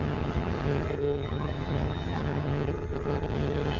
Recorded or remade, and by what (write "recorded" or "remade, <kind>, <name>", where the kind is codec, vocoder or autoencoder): remade, vocoder, HiFi-GAN